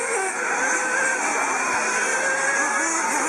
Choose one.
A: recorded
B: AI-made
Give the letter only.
A